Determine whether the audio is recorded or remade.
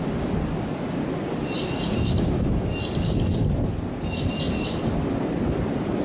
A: recorded